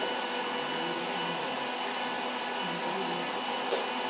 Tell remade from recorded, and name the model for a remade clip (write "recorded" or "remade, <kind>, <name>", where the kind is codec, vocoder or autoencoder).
recorded